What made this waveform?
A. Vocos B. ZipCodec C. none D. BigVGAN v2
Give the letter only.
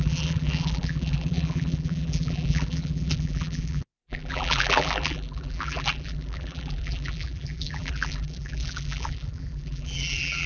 D